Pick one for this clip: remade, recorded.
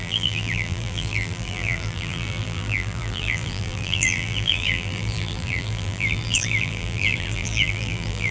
remade